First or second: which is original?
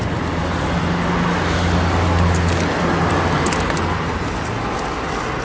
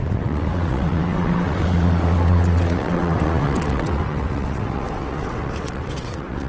first